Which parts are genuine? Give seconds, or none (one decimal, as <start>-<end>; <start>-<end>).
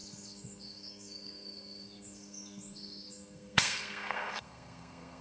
none